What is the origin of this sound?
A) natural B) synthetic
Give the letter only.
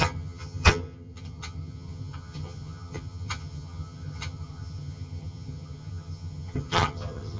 B